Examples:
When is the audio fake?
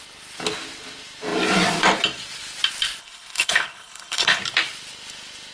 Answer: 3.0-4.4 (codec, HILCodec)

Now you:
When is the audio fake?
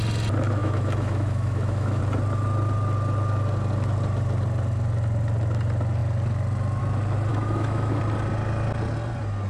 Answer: 0.6-2.0 (autoencoder, DAC-VAE); 7.3-8.0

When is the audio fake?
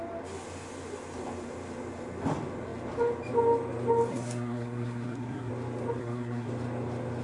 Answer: 4.1-5.5 (codec, SNAC); 6.0-6.5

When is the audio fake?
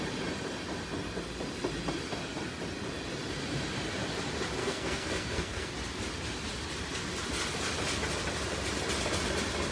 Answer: 4.6-5.7 (codec, SNAC)